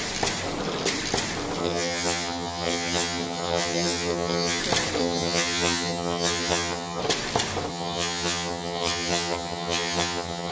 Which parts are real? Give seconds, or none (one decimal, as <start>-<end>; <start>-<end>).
0.0-1.6; 4.6-5.0; 7.0-7.7